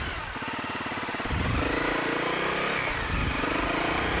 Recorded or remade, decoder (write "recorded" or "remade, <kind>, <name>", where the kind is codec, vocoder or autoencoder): recorded